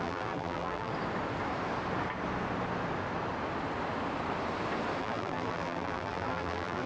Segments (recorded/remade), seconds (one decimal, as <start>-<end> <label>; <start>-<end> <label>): 0.0-0.9 remade; 0.9-5.0 recorded; 5.0-6.9 remade